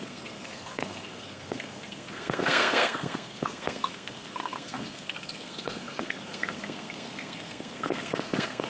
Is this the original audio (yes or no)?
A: no